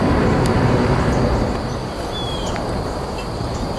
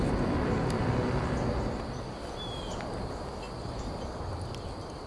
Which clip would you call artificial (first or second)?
first